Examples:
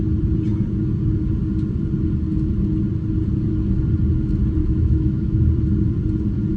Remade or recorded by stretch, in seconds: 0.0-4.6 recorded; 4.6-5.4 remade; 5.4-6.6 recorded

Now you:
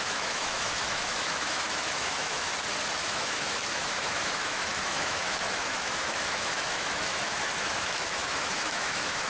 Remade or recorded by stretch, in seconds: 0.0-2.5 remade; 2.5-3.0 recorded; 3.0-9.3 remade

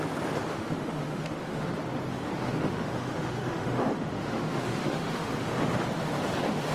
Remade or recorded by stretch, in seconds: 0.0-0.5 recorded; 0.5-1.7 remade; 1.7-2.1 recorded; 2.1-5.3 remade; 5.3-6.7 recorded

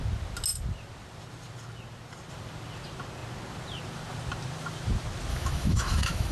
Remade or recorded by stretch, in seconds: 0.0-5.3 recorded; 5.3-6.3 remade